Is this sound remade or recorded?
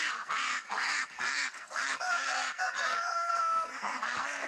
remade